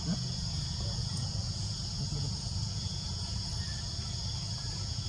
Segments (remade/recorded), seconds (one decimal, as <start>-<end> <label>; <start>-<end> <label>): 0.0-3.5 remade; 3.5-4.5 recorded; 4.5-5.1 remade